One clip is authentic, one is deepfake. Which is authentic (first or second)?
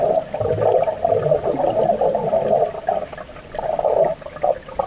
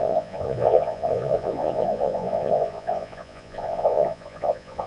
first